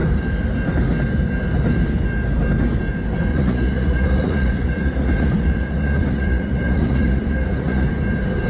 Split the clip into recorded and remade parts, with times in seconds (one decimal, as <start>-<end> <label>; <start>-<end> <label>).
0.0-3.3 recorded; 3.3-7.9 remade; 7.9-8.5 recorded